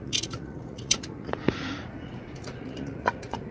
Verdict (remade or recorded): remade